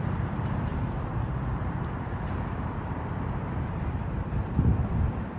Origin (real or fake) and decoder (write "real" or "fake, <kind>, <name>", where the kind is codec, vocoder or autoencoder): fake, vocoder, BigVGAN v2